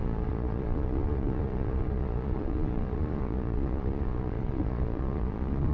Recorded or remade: remade